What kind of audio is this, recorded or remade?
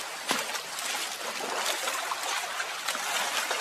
recorded